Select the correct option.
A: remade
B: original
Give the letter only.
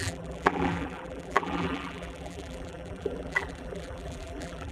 A